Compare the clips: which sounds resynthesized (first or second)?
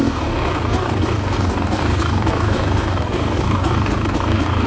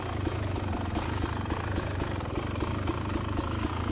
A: first